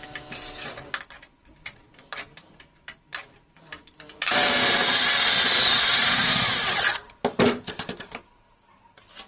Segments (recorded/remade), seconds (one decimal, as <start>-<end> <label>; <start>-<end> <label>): 0.0-4.4 remade; 4.4-5.5 recorded; 5.5-9.3 remade